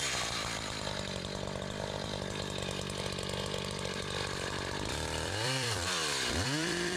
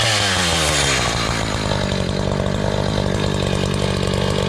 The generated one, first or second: first